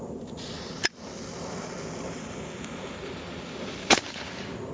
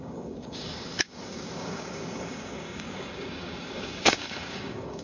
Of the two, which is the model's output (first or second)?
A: second